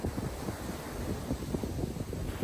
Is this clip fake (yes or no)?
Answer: no